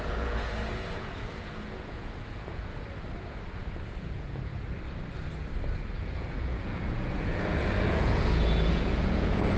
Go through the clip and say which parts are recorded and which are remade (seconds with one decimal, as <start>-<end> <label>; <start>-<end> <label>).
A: 0.0-2.7 remade; 2.7-4.0 recorded; 4.0-4.5 remade; 4.5-5.8 recorded; 5.8-9.6 remade